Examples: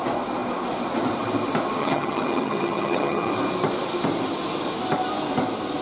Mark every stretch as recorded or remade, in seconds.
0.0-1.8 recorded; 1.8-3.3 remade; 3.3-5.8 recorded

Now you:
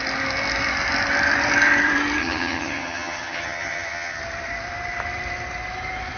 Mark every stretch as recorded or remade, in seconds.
0.0-2.2 recorded; 2.2-4.2 remade; 4.2-6.2 recorded